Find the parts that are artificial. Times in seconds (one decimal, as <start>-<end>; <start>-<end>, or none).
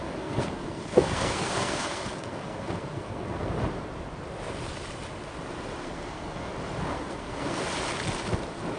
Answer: 0.0-3.5; 5.8-6.5; 6.9-7.6